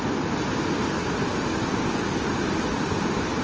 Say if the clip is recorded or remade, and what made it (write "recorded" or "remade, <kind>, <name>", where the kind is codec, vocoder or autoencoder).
recorded